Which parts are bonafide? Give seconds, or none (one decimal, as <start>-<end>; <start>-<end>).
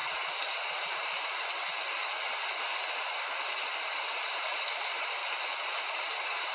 0.0-0.7; 2.0-3.4; 5.2-5.8